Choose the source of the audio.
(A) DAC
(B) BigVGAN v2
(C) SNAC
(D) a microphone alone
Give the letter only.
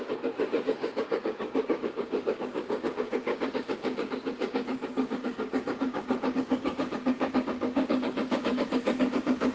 A